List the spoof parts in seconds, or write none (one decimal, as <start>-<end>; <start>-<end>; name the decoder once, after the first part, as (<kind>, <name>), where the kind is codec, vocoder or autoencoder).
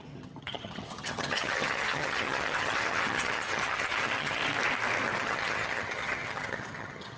0.0-4.4 (vocoder, HiFi-GAN); 5.2-7.2